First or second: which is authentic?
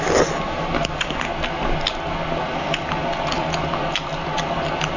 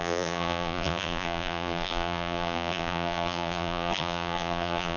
first